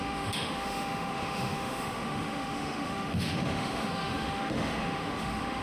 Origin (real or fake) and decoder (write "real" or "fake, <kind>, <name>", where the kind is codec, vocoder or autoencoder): fake, autoencoder, DAC-VAE